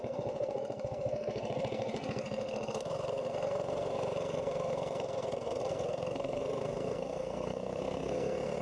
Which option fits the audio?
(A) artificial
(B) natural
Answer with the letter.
A